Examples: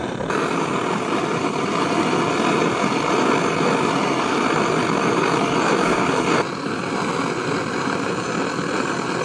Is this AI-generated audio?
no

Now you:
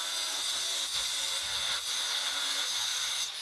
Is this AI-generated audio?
no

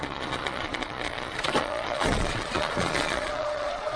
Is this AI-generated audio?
yes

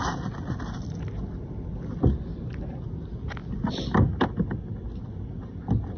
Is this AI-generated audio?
no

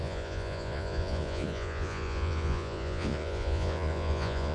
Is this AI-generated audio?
yes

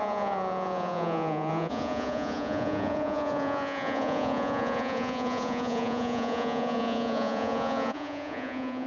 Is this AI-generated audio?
yes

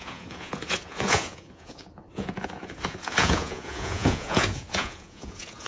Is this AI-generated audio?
yes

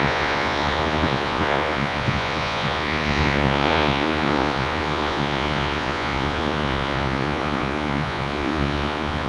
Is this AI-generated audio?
yes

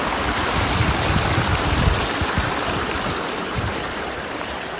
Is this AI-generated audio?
no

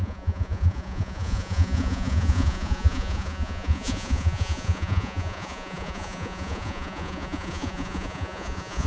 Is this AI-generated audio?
yes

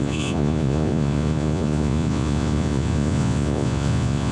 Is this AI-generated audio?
yes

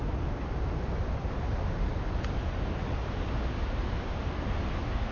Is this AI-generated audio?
no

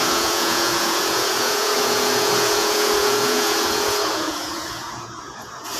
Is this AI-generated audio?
yes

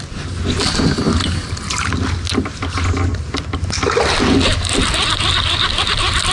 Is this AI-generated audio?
no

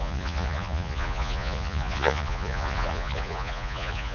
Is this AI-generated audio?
yes